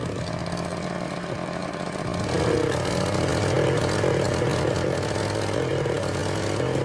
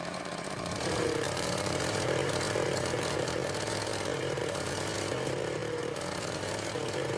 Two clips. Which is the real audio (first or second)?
first